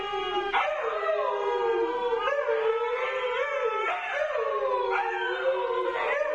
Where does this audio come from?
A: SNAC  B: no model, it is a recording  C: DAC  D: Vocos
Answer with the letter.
B